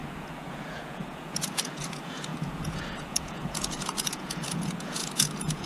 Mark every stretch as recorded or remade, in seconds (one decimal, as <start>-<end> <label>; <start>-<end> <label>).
0.0-5.7 remade